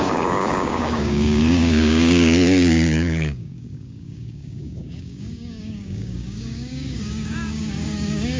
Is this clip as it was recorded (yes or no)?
no